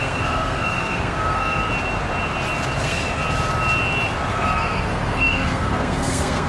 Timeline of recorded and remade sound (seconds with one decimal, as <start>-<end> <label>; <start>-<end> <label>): 0.0-1.6 remade; 1.6-2.8 recorded; 2.8-3.2 remade; 3.2-4.3 recorded; 4.3-6.5 remade